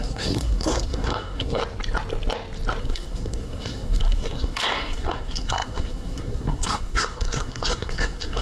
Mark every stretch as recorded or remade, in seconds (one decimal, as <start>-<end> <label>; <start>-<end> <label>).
0.0-1.6 remade; 1.6-2.8 recorded; 2.8-8.4 remade